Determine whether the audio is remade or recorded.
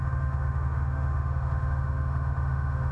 remade